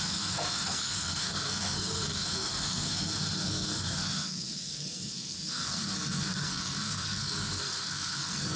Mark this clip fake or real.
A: fake